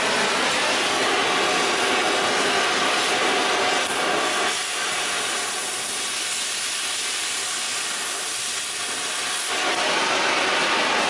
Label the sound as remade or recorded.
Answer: recorded